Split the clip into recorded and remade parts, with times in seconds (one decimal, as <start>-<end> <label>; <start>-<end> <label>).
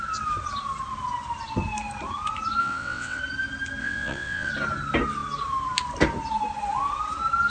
0.0-2.6 recorded; 2.6-3.2 remade; 3.2-3.8 recorded; 3.8-4.5 remade; 4.5-7.5 recorded